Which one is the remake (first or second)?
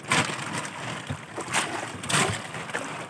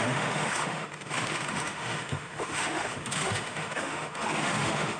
second